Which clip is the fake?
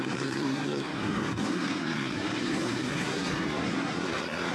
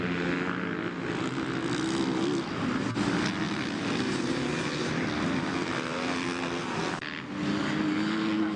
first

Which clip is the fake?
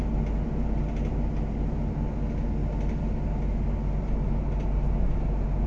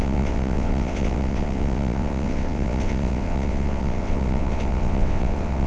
second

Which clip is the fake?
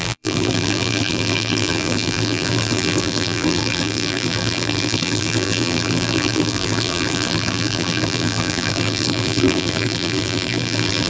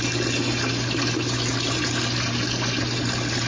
first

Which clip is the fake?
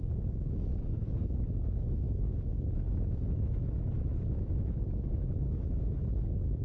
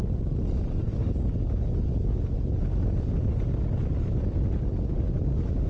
first